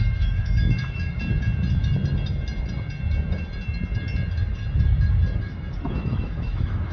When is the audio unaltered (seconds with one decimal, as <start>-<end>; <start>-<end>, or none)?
1.3-5.4